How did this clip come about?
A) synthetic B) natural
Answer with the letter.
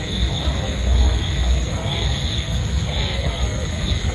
A